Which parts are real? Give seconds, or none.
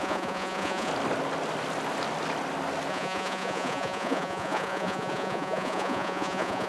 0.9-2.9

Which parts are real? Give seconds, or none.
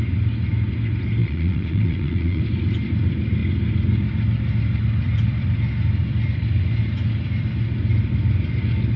0.0-1.2; 2.4-9.0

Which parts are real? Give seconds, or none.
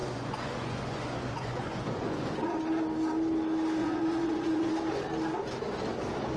2.6-3.8; 4.7-6.4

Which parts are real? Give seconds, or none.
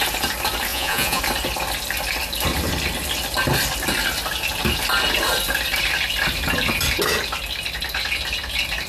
0.0-0.7; 1.2-8.9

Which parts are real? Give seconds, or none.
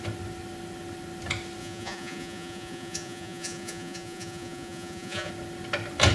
0.0-1.6; 5.3-6.1